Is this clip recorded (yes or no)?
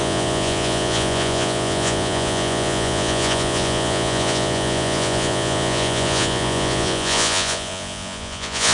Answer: no